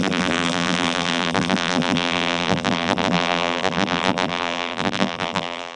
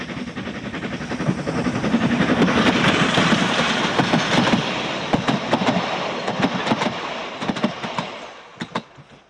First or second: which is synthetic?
first